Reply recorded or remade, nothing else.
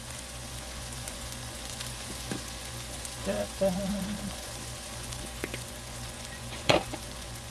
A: remade